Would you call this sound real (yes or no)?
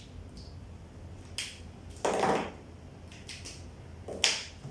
yes